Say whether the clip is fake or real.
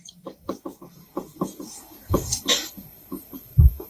fake